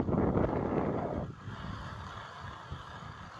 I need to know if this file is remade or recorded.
recorded